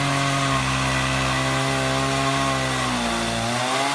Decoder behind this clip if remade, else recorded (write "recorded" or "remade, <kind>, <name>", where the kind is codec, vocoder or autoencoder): recorded